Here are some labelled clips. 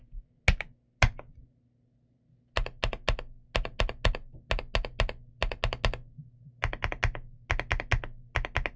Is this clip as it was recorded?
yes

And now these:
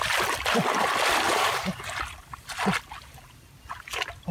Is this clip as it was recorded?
yes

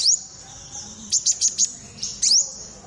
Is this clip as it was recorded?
yes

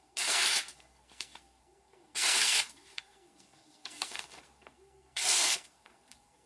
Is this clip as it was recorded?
no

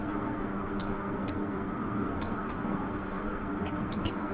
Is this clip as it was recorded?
no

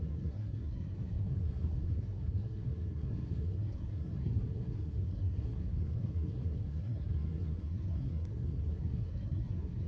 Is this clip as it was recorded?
no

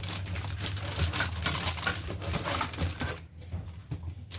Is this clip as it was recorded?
yes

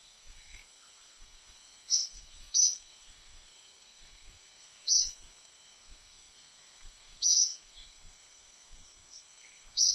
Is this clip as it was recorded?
no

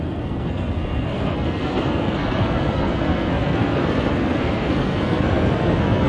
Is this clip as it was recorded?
no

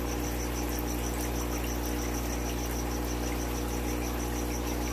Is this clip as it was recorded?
yes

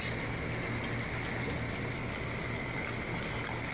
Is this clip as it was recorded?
yes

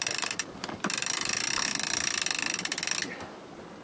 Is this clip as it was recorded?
yes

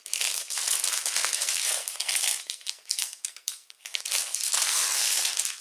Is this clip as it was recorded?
no